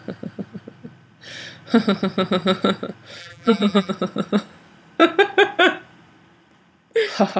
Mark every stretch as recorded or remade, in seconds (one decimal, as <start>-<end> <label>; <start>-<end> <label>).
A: 0.0-3.2 recorded; 3.2-3.9 remade; 3.9-7.4 recorded